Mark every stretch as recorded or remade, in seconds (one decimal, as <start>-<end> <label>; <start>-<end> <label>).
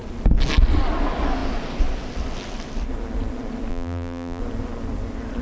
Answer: 0.0-3.7 recorded; 3.7-4.4 remade; 4.4-5.4 recorded